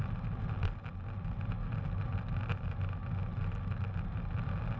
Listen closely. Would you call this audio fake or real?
real